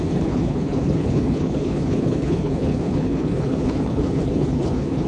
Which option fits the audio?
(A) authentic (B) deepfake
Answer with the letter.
B